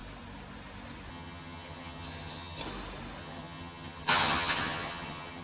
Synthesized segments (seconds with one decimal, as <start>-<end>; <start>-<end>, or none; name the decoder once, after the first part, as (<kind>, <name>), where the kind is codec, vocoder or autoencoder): 1.1-2.6 (vocoder, HiFi-GAN); 3.2-5.4